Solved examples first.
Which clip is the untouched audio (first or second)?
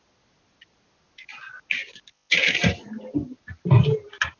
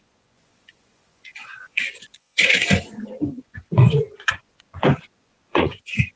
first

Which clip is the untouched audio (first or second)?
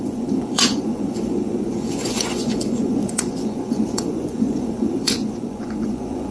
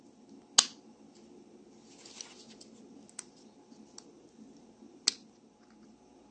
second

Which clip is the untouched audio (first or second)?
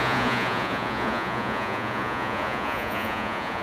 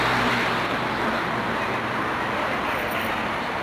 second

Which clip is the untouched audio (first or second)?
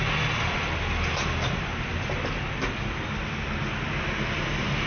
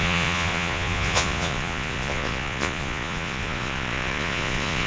first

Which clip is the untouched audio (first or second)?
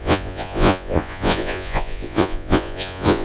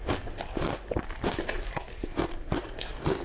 second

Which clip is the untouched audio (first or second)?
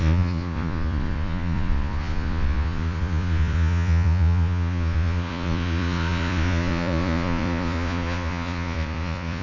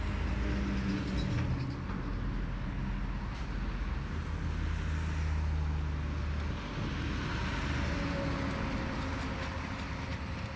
second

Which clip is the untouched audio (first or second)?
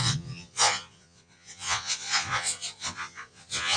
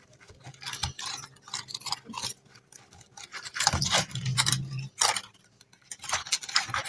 second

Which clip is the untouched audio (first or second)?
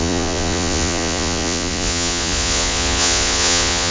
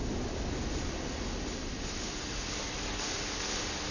second